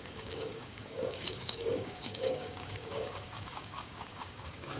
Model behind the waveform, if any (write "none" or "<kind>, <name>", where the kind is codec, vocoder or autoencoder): codec, DAC